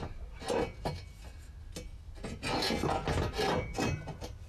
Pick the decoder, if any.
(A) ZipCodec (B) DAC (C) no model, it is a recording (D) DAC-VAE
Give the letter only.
C